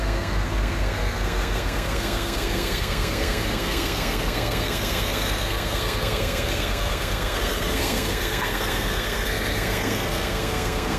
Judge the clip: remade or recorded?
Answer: remade